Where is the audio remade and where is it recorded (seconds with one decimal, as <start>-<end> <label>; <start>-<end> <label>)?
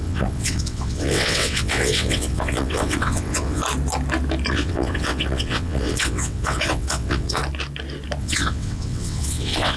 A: 0.0-3.6 remade; 3.6-4.5 recorded; 4.5-7.4 remade; 7.4-8.2 recorded; 8.2-9.8 remade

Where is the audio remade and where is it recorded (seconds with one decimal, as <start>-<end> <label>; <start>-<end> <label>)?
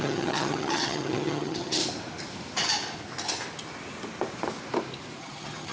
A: 0.0-1.8 remade; 1.8-5.2 recorded; 5.2-5.7 remade